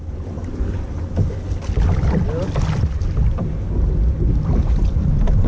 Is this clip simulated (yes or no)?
no